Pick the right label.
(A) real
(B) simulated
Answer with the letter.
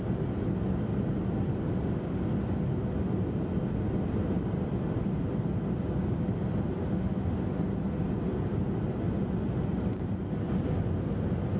A